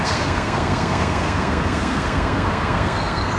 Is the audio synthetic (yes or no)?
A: yes